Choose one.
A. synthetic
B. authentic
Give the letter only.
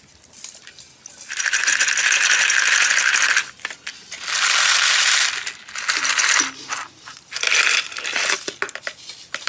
B